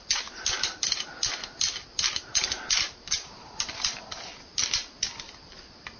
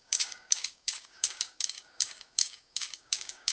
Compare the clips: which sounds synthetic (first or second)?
second